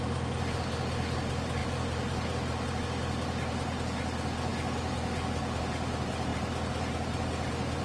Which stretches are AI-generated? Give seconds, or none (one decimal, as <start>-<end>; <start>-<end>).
none